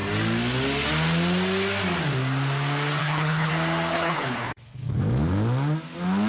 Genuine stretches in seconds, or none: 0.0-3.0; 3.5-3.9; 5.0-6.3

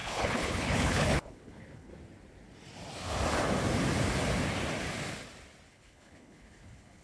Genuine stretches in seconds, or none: 1.9-5.7

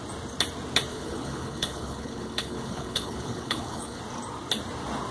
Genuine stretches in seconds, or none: 0.0-0.9; 4.0-5.1